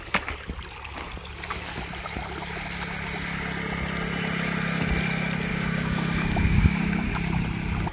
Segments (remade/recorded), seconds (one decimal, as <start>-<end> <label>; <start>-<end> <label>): 0.0-5.5 recorded; 5.5-7.1 remade; 7.1-7.9 recorded